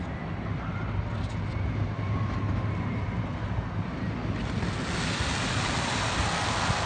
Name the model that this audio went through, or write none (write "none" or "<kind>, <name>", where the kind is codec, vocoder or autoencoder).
none